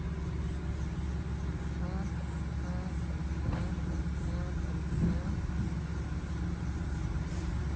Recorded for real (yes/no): yes